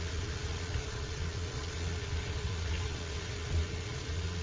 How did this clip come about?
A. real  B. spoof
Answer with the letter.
B